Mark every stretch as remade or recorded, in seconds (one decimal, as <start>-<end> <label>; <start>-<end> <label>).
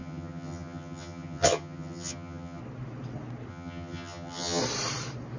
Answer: 0.0-2.6 remade; 2.6-3.5 recorded; 3.5-4.6 remade; 4.6-5.4 recorded